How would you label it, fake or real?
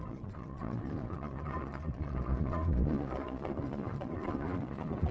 fake